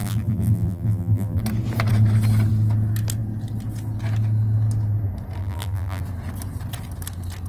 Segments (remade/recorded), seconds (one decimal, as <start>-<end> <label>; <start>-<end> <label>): 0.0-1.4 remade; 1.4-5.4 recorded; 5.4-6.0 remade; 6.0-7.5 recorded